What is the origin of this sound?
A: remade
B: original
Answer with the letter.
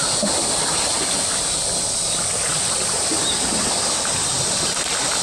B